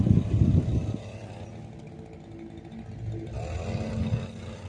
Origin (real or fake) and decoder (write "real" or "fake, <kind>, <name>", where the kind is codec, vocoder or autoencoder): real